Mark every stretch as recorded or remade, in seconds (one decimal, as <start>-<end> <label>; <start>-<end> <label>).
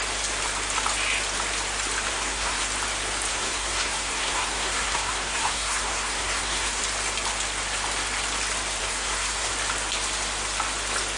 0.0-2.1 recorded; 2.1-2.6 remade; 2.6-3.3 recorded; 3.3-6.8 remade; 6.8-8.8 recorded; 8.8-9.5 remade; 9.5-11.2 recorded